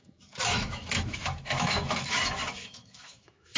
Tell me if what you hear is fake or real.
fake